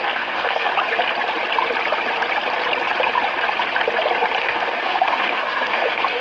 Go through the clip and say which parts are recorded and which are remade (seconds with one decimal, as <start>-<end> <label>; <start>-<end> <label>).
0.0-0.7 remade; 0.7-4.4 recorded; 4.4-6.2 remade